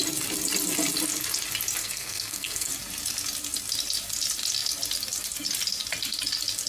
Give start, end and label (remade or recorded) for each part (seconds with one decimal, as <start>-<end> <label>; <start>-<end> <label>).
0.0-1.8 recorded; 1.8-2.7 remade; 2.7-6.7 recorded